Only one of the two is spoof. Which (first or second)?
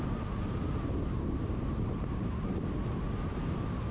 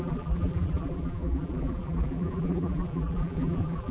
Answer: second